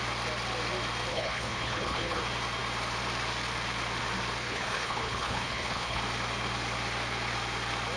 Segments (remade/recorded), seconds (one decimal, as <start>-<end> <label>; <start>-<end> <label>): 0.0-1.1 recorded; 1.1-2.2 remade; 2.2-4.4 recorded; 4.4-6.0 remade; 6.0-8.0 recorded